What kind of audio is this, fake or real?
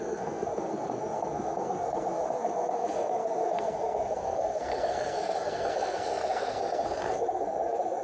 fake